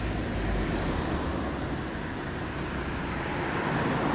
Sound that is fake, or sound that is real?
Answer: real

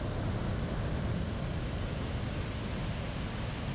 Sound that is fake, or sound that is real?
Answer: real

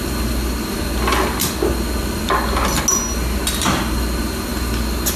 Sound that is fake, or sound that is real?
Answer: real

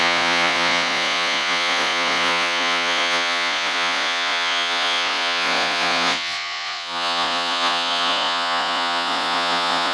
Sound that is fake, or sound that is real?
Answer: fake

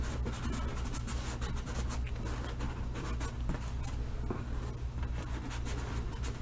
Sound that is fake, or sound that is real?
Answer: real